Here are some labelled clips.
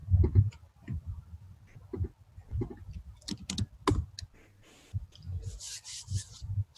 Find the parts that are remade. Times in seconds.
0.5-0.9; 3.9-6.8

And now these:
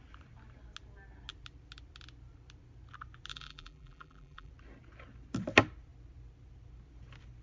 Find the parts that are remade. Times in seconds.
3.3-4.5

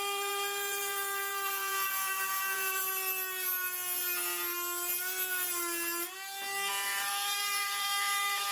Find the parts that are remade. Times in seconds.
0.0-2.8; 6.7-8.5

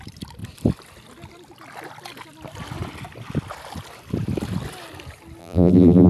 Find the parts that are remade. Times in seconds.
5.4-6.1

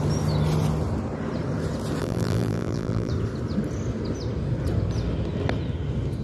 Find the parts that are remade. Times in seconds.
2.0-3.1

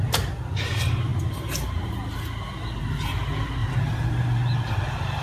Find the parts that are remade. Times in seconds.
3.6-4.4